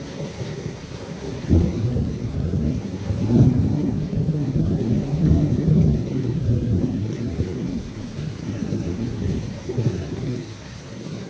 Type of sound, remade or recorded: remade